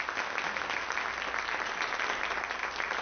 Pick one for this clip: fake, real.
real